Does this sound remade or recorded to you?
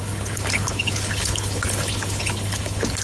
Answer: remade